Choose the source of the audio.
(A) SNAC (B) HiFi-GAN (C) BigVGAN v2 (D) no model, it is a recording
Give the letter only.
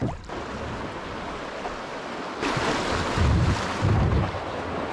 D